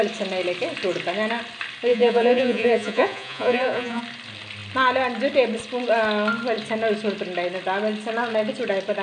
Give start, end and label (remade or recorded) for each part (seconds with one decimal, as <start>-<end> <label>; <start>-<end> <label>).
0.0-1.9 recorded; 1.9-4.0 remade; 4.0-9.0 recorded